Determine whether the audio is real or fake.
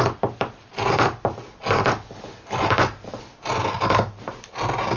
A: real